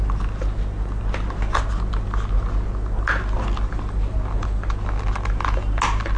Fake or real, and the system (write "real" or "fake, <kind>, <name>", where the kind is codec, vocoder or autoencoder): real